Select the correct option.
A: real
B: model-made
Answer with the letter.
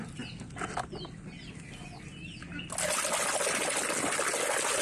A